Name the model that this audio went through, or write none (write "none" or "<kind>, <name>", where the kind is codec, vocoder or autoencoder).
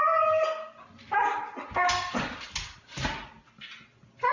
none